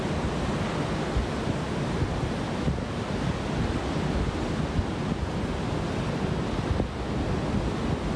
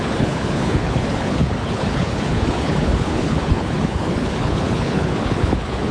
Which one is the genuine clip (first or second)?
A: first